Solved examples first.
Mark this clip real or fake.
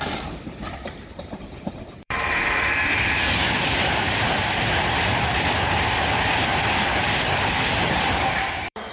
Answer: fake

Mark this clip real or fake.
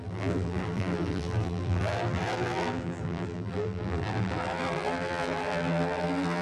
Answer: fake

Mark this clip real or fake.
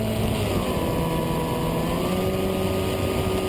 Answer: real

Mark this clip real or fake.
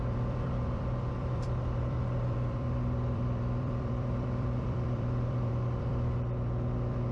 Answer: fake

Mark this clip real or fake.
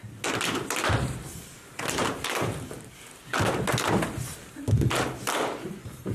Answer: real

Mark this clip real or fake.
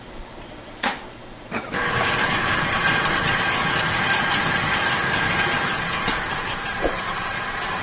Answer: fake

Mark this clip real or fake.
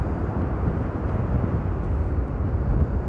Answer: real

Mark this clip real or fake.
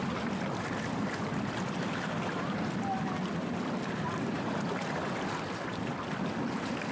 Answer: real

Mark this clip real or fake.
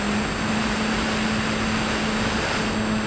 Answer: real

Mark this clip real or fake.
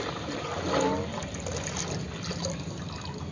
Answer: real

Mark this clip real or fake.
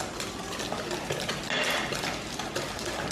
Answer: real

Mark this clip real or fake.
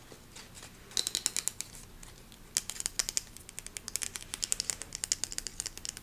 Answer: real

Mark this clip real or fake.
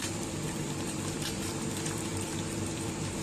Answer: fake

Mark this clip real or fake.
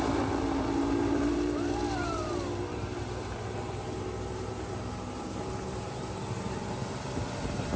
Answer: fake